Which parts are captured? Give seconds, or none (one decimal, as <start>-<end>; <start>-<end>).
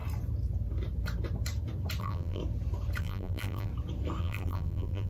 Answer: 0.0-2.0; 2.4-3.0; 3.7-4.2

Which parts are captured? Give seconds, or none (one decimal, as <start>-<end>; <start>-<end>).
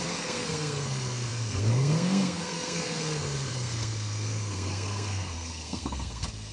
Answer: none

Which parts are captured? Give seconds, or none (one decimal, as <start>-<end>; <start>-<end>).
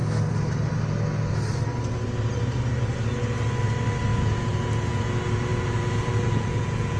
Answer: 0.0-4.1; 5.1-5.5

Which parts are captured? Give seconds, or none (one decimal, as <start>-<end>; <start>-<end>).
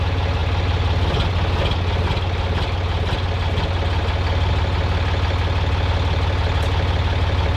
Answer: 0.0-7.6